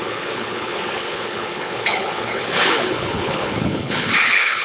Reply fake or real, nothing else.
fake